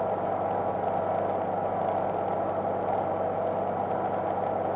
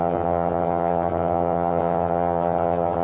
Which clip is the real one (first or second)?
first